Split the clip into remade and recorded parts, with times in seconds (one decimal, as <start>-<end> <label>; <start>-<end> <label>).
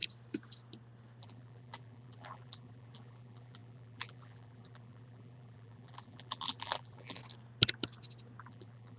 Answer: 0.0-1.2 recorded; 1.2-7.2 remade; 7.2-8.4 recorded; 8.4-9.0 remade